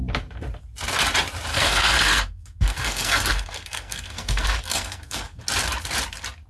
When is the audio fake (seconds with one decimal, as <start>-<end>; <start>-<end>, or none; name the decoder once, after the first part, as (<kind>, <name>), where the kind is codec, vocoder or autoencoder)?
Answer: 1.5-5.4 (codec, SNAC)